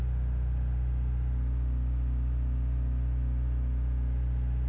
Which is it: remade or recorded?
recorded